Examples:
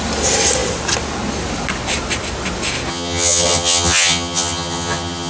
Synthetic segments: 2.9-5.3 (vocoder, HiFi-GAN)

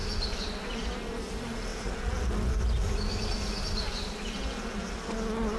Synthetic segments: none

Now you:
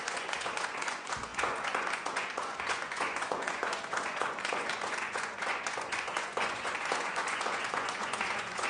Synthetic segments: 0.0-8.7 (vocoder, Vocos)

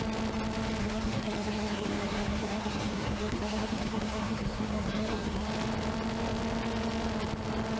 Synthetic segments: 0.8-5.5 (codec, SNAC)

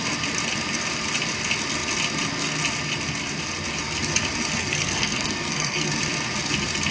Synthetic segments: 4.6-5.9 (codec, SNAC)

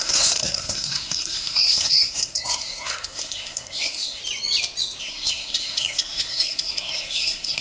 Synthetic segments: 0.0-4.2 (codec, SNAC); 5.0-7.6